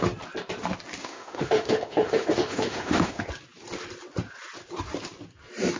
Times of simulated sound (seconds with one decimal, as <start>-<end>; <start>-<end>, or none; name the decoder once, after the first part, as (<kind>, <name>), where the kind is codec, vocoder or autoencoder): 1.0-3.2 (autoencoder, DAC-VAE)